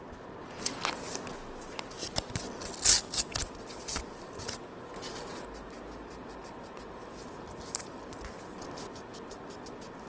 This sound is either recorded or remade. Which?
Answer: recorded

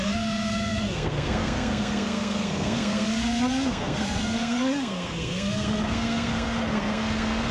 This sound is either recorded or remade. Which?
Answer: remade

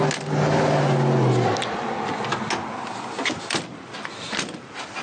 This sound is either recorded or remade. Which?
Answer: recorded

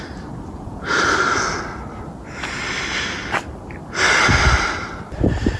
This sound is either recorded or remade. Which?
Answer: recorded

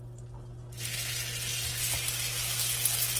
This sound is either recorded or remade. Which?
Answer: recorded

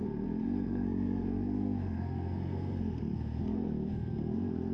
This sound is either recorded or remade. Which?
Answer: remade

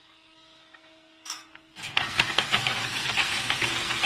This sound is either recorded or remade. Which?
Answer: remade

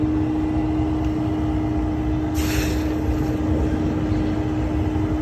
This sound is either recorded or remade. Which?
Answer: recorded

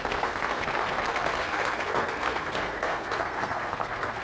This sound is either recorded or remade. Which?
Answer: remade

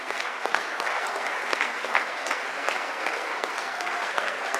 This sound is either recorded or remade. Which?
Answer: remade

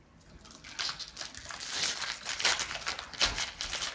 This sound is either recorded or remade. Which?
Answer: recorded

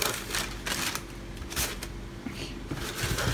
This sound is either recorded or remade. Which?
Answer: recorded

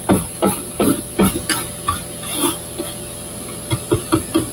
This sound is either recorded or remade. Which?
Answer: recorded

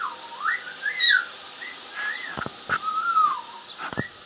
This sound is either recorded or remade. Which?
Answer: recorded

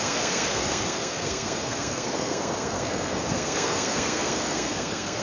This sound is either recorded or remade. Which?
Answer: remade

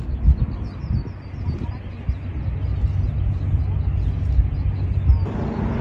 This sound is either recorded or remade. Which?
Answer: recorded